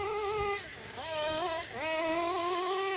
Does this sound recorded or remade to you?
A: remade